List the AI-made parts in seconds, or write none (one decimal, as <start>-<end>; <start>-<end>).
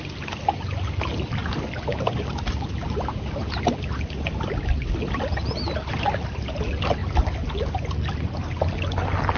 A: none